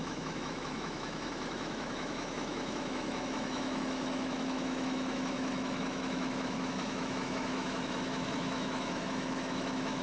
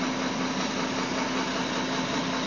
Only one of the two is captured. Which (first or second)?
second